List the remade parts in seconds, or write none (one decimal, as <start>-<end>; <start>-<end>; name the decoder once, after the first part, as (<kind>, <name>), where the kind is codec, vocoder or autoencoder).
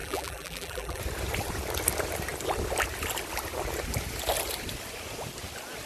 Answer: 0.0-1.0 (vocoder, BigVGAN v2)